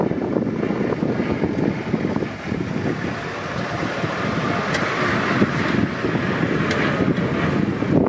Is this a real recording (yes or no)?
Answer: yes